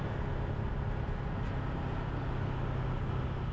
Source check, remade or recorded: recorded